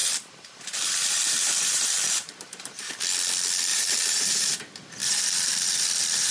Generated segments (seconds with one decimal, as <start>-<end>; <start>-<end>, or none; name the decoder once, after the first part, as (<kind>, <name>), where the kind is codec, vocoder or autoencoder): 0.0-2.9 (vocoder, BigVGAN v2); 3.7-4.6; 5.0-6.3